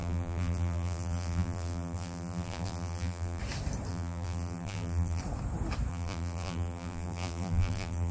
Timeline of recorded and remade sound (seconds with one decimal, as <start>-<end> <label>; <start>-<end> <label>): 0.0-3.4 remade; 3.4-3.9 recorded; 3.9-5.2 remade; 5.2-5.9 recorded; 5.9-8.1 remade